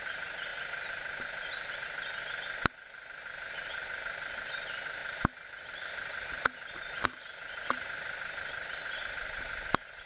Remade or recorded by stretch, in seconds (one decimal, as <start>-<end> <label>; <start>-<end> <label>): 0.0-10.1 recorded